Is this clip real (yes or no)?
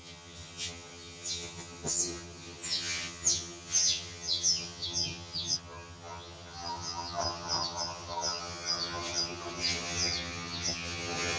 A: no